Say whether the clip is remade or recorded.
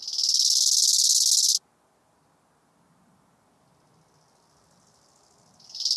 recorded